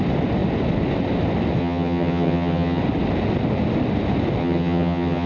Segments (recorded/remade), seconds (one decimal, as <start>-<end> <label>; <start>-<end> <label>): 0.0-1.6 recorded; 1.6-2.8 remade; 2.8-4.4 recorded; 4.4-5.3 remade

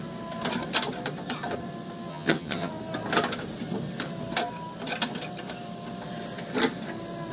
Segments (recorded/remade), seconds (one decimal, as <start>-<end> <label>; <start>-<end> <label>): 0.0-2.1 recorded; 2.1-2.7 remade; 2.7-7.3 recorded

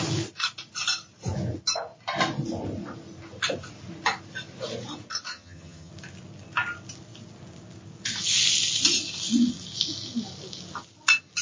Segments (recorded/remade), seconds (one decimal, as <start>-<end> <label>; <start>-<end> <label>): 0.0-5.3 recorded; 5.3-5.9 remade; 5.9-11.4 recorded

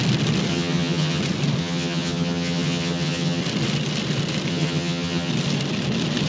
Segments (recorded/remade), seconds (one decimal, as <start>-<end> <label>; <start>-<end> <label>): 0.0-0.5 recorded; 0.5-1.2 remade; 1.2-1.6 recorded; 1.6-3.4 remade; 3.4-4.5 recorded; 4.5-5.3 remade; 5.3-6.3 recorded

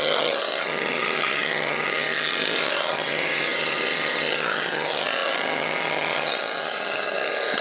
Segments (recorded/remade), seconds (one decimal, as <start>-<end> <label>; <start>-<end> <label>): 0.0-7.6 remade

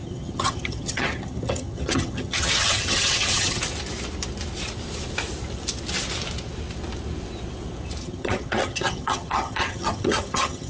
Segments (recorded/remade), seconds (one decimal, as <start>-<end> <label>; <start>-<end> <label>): 0.0-3.6 remade; 3.6-8.0 recorded; 8.0-10.7 remade

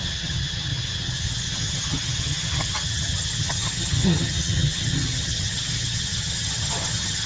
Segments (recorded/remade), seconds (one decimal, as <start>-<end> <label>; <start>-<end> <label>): 0.0-7.3 remade